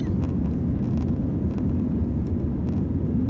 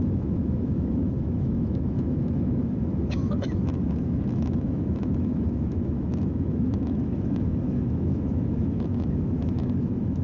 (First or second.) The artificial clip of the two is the second